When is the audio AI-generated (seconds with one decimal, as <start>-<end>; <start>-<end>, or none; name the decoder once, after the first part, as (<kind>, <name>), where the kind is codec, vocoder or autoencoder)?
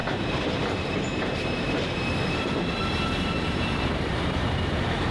0.0-5.1 (vocoder, BigVGAN v2)